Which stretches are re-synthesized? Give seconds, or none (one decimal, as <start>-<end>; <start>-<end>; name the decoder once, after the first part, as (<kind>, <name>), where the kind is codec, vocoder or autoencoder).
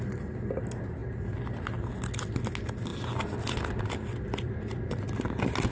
none